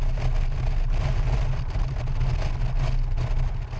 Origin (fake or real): real